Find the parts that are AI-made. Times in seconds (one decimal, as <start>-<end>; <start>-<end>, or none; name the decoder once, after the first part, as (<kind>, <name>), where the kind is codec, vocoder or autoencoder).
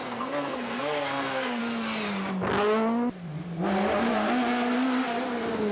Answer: 0.0-1.6 (codec, SNAC)